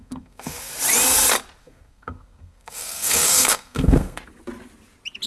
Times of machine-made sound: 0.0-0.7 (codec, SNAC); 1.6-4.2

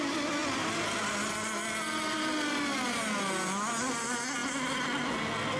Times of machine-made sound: none

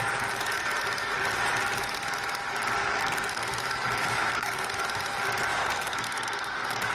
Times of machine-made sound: 2.8-3.6 (codec, SNAC); 4.2-4.7; 5.6-6.9

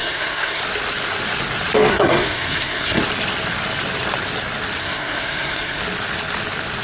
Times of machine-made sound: 0.0-0.6 (codec, SNAC); 1.9-3.0; 4.8-5.8